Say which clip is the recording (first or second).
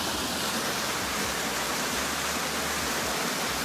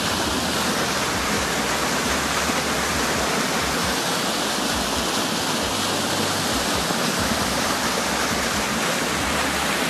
first